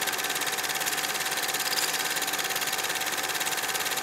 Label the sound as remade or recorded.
recorded